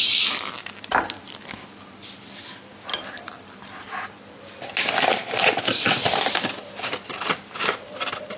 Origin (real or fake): real